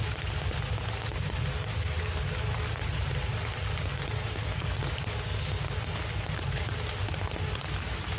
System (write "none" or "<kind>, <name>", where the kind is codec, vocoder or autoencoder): none